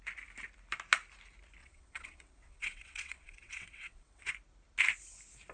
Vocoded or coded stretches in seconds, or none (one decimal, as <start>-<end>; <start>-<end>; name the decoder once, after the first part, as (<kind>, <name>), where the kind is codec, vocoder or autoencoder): 1.6-4.3 (vocoder, WaveNeXt)